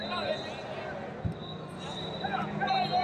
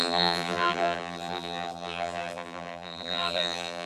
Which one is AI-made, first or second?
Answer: second